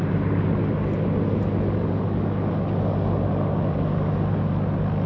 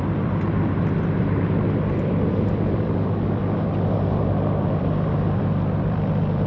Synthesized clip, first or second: second